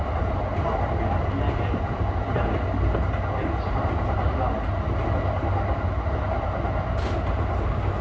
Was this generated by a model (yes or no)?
no